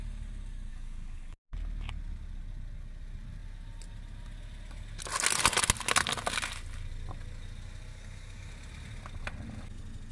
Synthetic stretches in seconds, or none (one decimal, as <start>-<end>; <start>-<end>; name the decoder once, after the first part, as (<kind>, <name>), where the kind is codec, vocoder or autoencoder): 0.7-1.4 (codec, DAC); 7.9-8.5